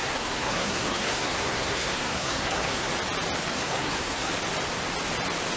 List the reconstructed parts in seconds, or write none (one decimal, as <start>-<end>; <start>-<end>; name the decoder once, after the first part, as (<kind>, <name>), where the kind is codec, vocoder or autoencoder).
0.0-2.9 (codec, SNAC); 3.5-4.3